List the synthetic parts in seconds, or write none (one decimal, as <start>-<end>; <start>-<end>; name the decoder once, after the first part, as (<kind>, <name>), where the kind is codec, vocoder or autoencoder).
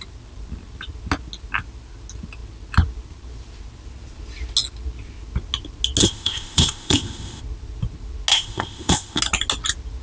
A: 6.0-7.4 (codec, ZipCodec); 8.3-9.2